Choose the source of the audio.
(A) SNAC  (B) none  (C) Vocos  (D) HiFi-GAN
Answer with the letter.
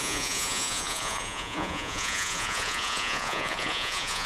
C